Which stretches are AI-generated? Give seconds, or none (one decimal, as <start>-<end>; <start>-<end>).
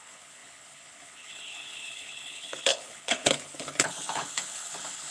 0.0-5.1